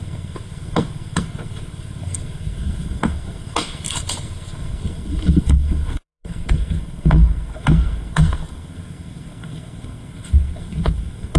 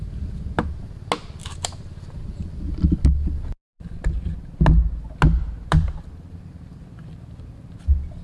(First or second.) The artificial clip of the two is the first